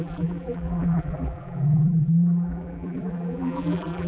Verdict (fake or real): fake